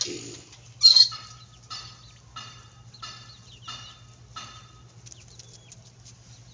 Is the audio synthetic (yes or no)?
no